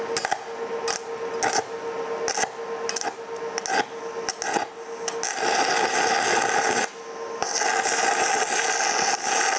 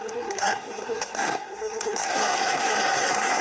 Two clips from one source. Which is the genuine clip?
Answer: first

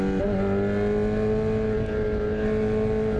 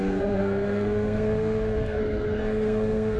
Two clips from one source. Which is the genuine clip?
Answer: first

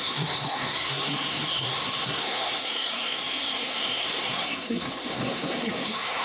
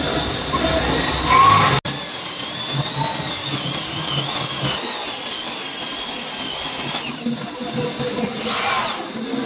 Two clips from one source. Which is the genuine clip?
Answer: second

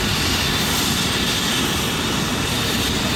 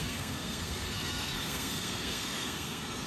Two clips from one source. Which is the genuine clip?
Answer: first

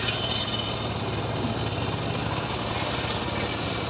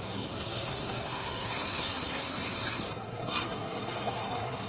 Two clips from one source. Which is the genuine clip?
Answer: first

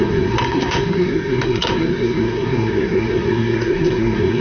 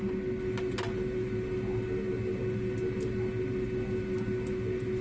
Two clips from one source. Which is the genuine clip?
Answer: second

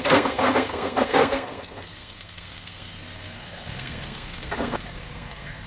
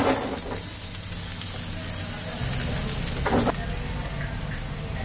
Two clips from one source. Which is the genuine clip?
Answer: second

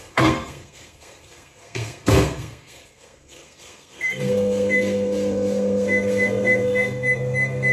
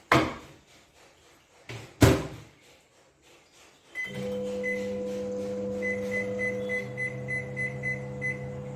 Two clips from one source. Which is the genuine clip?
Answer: second